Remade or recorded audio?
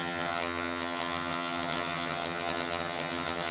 remade